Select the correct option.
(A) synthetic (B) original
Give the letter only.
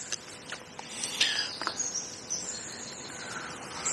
B